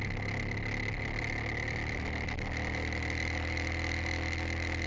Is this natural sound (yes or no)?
yes